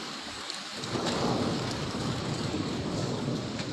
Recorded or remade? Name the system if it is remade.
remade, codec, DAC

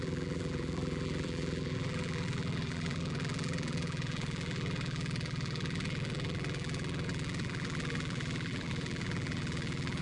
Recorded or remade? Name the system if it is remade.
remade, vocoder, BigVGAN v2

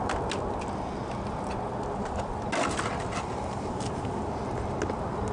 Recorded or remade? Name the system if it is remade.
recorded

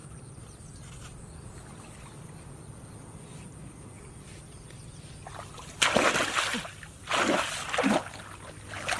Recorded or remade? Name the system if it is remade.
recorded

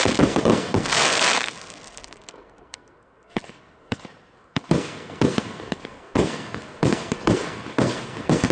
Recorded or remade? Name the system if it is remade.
remade, codec, SNAC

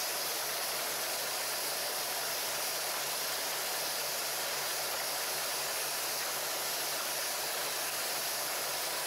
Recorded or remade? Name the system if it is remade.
recorded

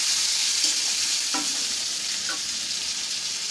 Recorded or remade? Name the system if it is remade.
remade, vocoder, BigVGAN v2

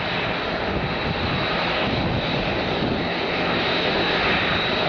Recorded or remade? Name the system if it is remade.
recorded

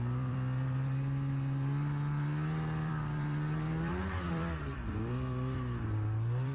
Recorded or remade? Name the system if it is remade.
remade, vocoder, BigVGAN v2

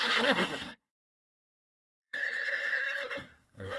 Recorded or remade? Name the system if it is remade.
remade, codec, SNAC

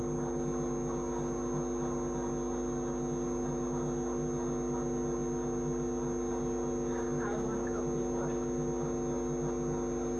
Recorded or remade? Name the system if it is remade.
recorded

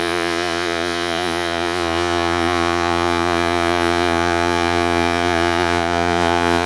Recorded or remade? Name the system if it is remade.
remade, vocoder, Vocos